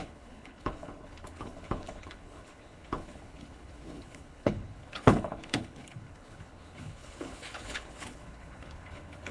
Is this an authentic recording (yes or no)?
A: no